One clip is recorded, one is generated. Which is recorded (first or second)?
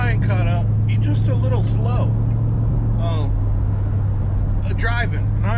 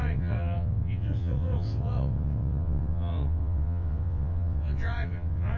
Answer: first